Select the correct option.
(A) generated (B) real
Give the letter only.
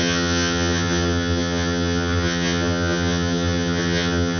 A